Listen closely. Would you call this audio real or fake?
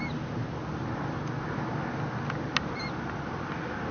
real